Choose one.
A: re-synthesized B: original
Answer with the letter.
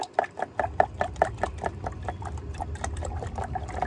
B